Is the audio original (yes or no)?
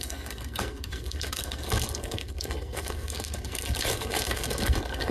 no